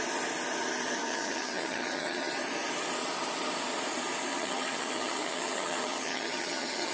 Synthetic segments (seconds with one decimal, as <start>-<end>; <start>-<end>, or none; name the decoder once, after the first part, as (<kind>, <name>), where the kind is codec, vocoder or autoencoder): 1.0-2.3 (vocoder, HiFi-GAN); 4.3-6.9